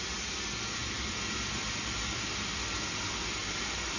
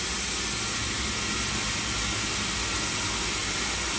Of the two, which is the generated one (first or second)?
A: first